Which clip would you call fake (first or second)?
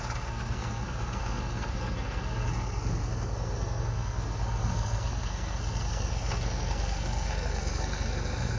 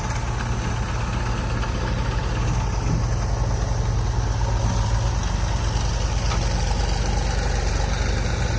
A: first